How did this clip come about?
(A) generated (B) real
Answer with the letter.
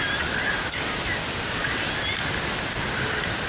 B